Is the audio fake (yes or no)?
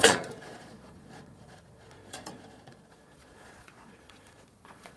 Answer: yes